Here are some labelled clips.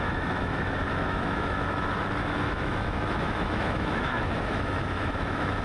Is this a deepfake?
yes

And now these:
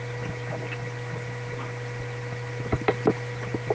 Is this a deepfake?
no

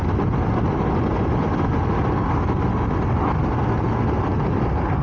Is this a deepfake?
no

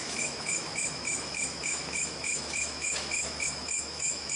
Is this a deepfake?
yes